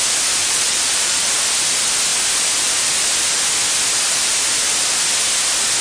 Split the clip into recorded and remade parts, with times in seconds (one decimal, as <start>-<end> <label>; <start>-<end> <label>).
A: 0.0-0.4 recorded; 0.4-1.3 remade; 1.3-5.8 recorded